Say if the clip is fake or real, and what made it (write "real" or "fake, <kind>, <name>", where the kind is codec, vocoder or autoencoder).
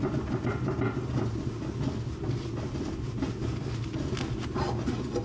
real